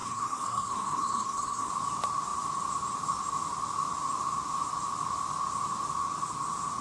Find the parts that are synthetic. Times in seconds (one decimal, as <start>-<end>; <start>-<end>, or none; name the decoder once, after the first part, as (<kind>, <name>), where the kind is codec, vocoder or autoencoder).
0.0-1.7 (codec, SNAC)